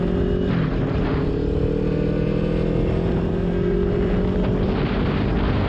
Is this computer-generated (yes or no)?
no